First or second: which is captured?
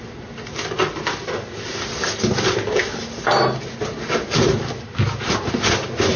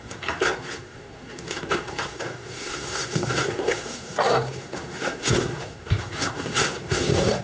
first